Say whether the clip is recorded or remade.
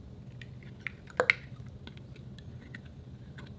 recorded